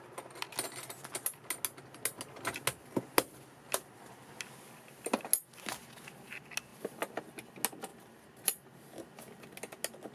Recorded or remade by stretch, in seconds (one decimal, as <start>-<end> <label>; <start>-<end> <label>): 0.0-6.7 recorded; 6.7-7.2 remade; 7.2-7.9 recorded; 7.9-9.0 remade; 9.0-10.1 recorded